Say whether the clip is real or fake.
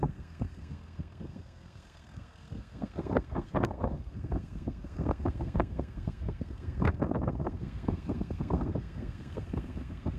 fake